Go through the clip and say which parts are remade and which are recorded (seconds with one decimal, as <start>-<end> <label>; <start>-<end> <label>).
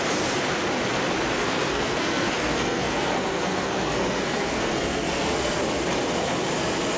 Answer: 0.0-1.4 recorded; 1.4-5.6 remade; 5.6-7.0 recorded